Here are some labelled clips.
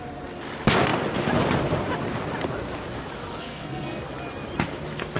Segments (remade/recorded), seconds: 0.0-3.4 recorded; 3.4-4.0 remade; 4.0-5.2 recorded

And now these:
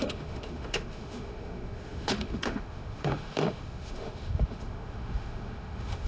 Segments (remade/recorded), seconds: 0.0-6.1 remade

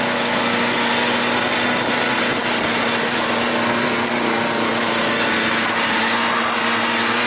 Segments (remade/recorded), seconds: 0.0-7.3 recorded

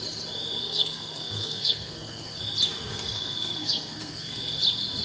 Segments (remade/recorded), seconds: 0.0-0.6 recorded; 0.6-2.4 remade; 2.4-2.9 recorded; 2.9-4.6 remade; 4.6-5.0 recorded

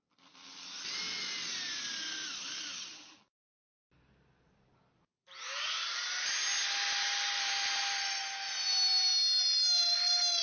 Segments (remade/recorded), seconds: 0.0-10.4 recorded

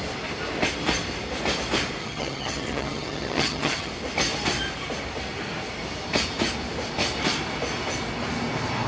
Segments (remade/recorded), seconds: 0.0-2.0 recorded; 2.0-3.9 remade; 3.9-8.9 recorded

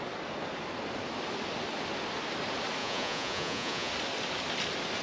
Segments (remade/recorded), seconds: 0.0-2.8 recorded; 2.8-3.9 remade; 3.9-5.0 recorded

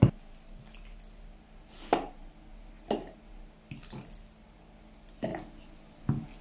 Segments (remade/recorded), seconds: 0.0-6.4 recorded